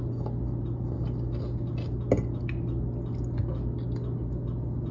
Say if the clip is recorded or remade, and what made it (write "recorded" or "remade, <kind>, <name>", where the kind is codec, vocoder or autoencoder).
recorded